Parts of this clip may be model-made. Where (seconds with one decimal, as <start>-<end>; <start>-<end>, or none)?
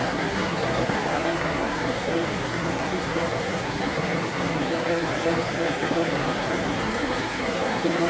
0.0-8.1